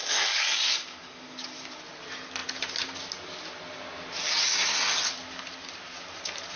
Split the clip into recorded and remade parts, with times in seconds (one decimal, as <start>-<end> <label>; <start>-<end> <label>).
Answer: 0.0-1.8 remade; 1.8-6.6 recorded